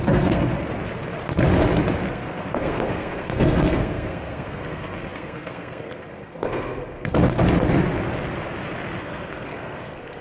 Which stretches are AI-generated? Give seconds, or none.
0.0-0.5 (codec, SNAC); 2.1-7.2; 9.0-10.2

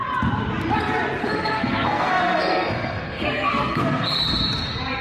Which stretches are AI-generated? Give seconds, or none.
1.2-4.2 (codec, SNAC)

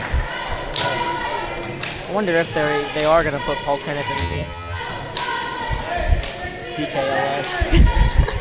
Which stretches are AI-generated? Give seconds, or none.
4.2-4.8 (vocoder, HiFi-GAN)

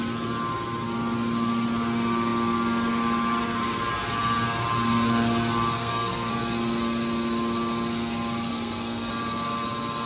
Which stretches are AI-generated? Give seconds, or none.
5.8-6.3 (codec, SNAC); 8.5-9.1

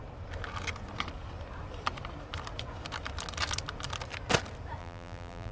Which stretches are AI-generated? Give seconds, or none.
4.8-5.5 (vocoder, BigVGAN v2)

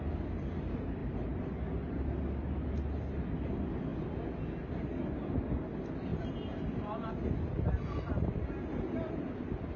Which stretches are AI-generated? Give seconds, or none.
6.1-7.3 (vocoder, BigVGAN v2)

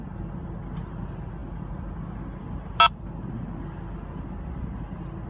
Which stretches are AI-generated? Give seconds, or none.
none

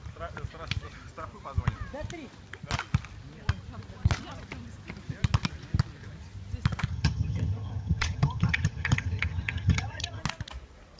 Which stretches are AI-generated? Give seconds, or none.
6.9-10.2 (vocoder, HiFi-GAN)